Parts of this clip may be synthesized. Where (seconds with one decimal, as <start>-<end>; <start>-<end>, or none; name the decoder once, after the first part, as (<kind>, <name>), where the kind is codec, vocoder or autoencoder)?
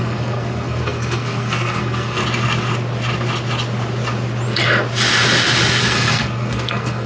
0.0-2.2 (codec, SNAC); 5.8-7.1